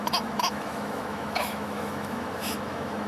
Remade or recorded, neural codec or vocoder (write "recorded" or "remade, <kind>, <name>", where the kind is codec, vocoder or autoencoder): remade, autoencoder, DAC-VAE